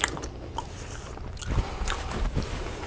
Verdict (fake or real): real